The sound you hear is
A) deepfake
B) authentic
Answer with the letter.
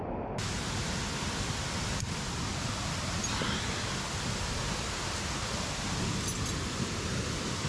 B